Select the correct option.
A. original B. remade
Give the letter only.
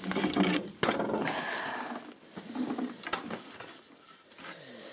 A